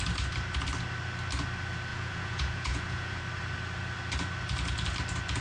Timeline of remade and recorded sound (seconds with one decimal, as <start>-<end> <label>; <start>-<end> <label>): 0.0-1.9 recorded; 1.9-3.2 remade; 3.2-5.4 recorded